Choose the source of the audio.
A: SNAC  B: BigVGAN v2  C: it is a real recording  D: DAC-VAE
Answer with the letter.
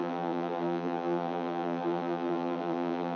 B